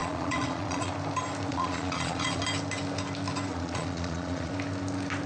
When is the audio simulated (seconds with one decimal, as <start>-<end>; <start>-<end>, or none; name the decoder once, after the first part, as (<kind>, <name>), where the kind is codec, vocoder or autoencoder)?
0.0-0.9 (vocoder, Vocos); 1.5-2.4; 3.5-4.5